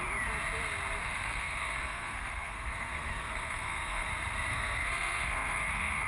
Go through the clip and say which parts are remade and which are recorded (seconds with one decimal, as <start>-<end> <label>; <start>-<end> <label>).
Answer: 0.0-1.0 recorded; 1.0-4.1 remade; 4.1-4.5 recorded; 4.5-6.1 remade